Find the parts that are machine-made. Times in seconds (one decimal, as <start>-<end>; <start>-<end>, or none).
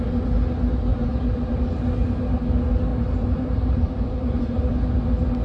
0.9-1.6; 2.9-4.7